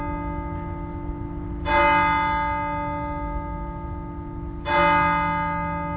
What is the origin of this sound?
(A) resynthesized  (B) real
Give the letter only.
B